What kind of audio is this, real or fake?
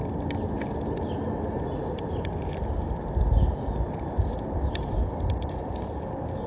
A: real